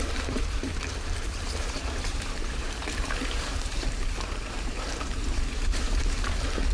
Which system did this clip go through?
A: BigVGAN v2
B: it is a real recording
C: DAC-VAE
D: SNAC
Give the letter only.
A